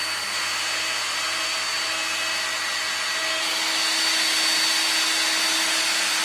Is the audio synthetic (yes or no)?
no